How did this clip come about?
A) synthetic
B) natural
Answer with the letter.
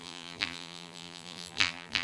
A